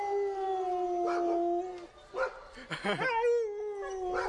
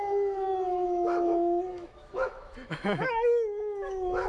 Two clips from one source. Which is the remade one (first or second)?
second